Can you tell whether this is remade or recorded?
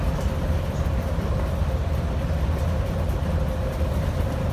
recorded